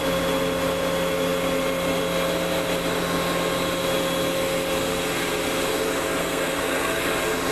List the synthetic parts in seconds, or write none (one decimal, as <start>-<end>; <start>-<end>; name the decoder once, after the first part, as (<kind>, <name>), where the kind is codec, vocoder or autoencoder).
6.2-7.0 (codec, SNAC)